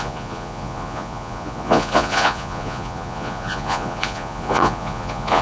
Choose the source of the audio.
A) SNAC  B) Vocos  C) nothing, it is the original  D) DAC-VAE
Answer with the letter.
B